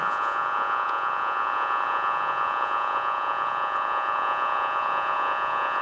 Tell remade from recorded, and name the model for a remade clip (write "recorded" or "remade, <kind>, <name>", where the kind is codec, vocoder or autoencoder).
remade, vocoder, Vocos